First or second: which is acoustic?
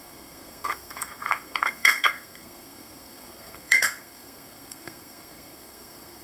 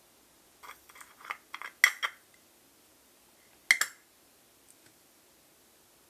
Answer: second